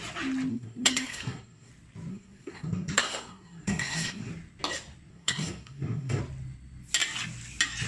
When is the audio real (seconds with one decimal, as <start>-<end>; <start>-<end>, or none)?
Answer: 0.0-0.5; 1.7-2.1; 4.3-5.1; 6.2-7.9